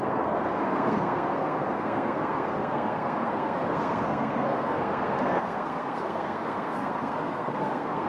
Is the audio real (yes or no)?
no